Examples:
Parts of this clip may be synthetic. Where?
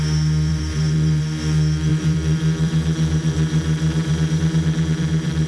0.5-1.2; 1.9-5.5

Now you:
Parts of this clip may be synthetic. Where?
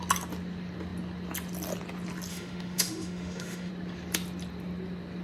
2.3-3.7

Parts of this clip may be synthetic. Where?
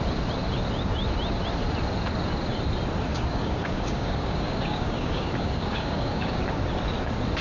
3.1-6.4